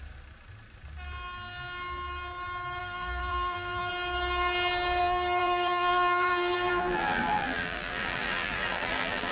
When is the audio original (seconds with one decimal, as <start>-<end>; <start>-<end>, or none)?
0.0-2.8; 3.9-5.0